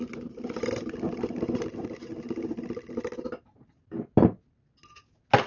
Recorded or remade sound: recorded